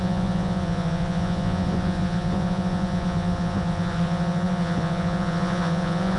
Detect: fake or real fake